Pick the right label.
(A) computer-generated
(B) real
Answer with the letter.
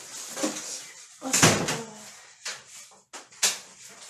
B